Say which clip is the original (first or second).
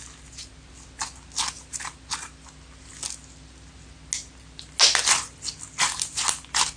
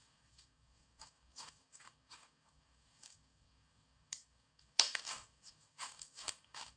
first